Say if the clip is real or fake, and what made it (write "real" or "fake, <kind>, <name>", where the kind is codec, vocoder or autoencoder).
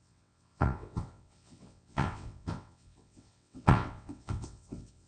fake, vocoder, WaveNeXt